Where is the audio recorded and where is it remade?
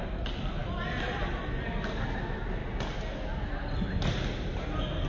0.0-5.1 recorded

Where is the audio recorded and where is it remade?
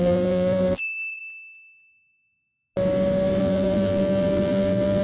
0.0-1.2 remade; 1.2-3.4 recorded; 3.4-5.0 remade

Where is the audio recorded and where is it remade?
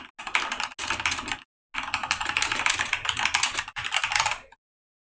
0.0-2.0 recorded; 2.0-3.9 remade; 3.9-5.1 recorded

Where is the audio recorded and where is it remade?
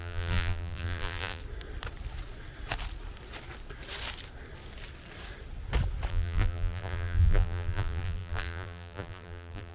0.0-1.4 remade; 1.4-6.1 recorded; 6.1-9.7 remade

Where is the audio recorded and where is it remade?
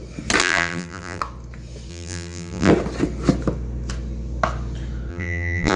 0.0-0.4 recorded; 0.4-1.2 remade; 1.2-1.9 recorded; 1.9-2.7 remade; 2.7-5.1 recorded; 5.1-5.8 remade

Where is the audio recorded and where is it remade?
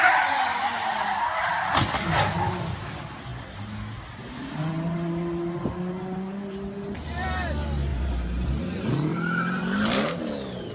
0.0-7.9 recorded; 7.9-8.6 remade; 8.6-9.1 recorded; 9.1-10.2 remade; 10.2-10.7 recorded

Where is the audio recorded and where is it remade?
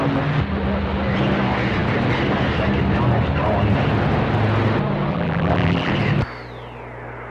0.0-5.1 recorded; 5.1-5.9 remade; 5.9-7.3 recorded